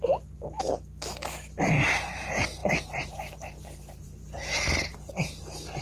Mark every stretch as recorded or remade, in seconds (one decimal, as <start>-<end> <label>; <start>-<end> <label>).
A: 0.0-2.6 recorded; 2.6-5.8 remade